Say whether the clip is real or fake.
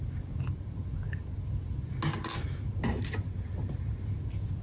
real